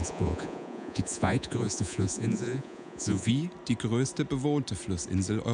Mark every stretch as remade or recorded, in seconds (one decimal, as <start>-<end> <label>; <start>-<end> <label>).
0.0-3.3 remade; 3.3-5.5 recorded